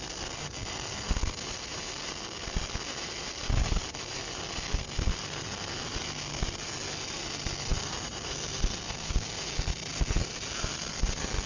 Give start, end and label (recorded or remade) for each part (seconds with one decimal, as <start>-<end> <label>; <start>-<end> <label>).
0.0-7.7 recorded; 7.7-8.3 remade; 8.3-11.5 recorded